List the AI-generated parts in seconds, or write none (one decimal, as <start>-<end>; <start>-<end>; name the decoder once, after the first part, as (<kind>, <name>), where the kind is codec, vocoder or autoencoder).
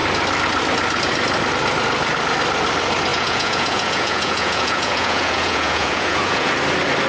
3.1-6.5 (vocoder, Vocos)